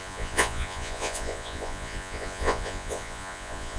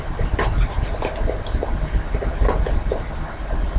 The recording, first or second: second